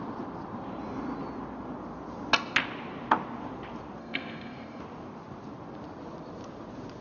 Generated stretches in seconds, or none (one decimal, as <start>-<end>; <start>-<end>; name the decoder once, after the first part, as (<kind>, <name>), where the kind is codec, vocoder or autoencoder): 4.0-4.8 (codec, SNAC)